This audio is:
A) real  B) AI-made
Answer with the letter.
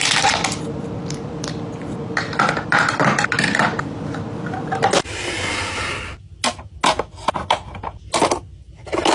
A